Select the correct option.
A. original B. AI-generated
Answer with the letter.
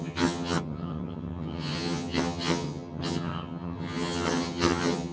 B